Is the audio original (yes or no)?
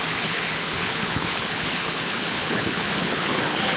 no